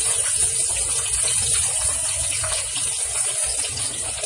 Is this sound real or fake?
fake